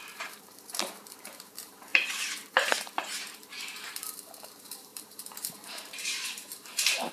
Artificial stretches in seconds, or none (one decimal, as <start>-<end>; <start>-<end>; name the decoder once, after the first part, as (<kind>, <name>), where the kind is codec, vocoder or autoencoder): 0.0-7.1 (vocoder, BigVGAN v2)